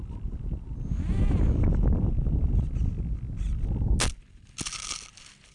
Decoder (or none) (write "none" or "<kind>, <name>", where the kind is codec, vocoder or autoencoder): none